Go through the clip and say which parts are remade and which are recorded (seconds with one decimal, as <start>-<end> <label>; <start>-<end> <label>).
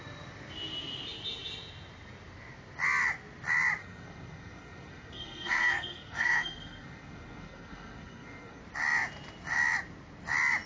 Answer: 0.0-3.8 recorded; 3.8-8.6 remade; 8.6-10.7 recorded